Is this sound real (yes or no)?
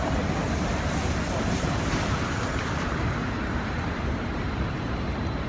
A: no